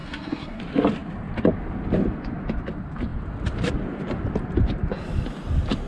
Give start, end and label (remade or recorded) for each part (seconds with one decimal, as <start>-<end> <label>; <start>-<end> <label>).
0.0-0.6 remade; 0.6-5.9 recorded